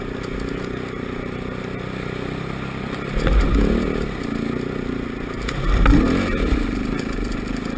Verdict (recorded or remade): recorded